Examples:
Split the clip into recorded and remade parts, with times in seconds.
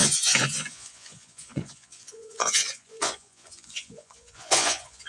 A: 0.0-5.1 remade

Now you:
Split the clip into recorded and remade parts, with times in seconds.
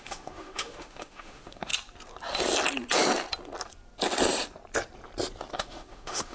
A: 0.0-1.7 remade; 1.7-5.5 recorded; 5.5-6.3 remade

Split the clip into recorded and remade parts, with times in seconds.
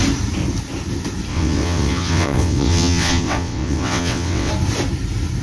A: 0.0-1.3 recorded; 1.3-4.5 remade; 4.5-5.4 recorded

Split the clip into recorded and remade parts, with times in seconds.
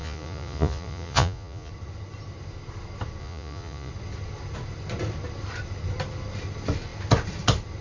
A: 0.0-1.7 remade; 1.7-3.2 recorded; 3.2-3.9 remade; 3.9-7.8 recorded